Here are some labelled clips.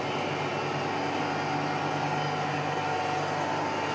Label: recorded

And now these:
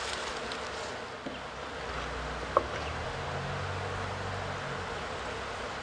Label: recorded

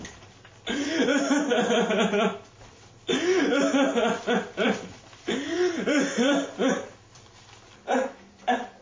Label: remade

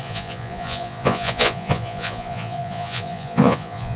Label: remade